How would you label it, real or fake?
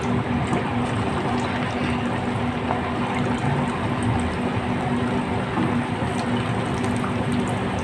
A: real